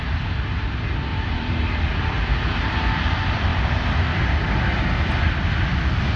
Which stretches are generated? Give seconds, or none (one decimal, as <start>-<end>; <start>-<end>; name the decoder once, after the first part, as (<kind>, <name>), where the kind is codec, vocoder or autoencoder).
1.1-2.4 (vocoder, BigVGAN v2); 3.5-5.1